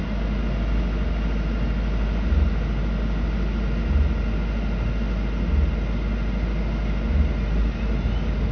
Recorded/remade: recorded